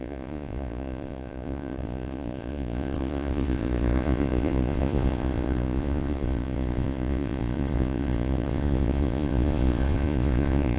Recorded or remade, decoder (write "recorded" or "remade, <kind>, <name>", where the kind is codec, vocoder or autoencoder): remade, vocoder, Vocos